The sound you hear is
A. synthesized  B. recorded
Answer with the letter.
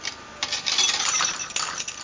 B